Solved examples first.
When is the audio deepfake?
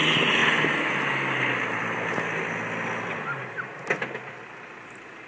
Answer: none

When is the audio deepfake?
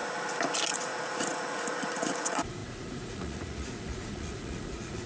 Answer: 0.7-5.1 (vocoder, Vocos)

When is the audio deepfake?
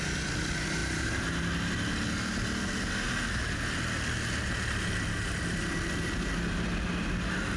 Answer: none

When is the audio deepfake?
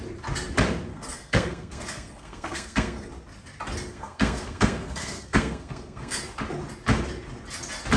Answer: 0.9-3.1 (codec, SNAC); 3.9-6.2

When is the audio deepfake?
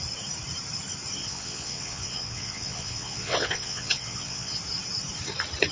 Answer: 1.2-4.6 (vocoder, WaveNeXt)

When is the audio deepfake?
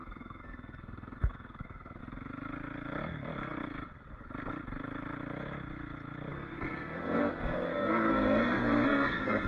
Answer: 0.0-2.0 (codec, SNAC); 6.3-9.5